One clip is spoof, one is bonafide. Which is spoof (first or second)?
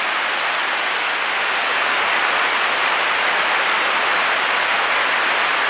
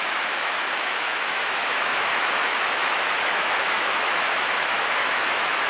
second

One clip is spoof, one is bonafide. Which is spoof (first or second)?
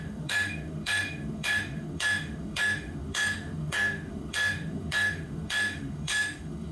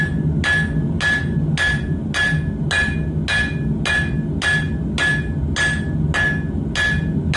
first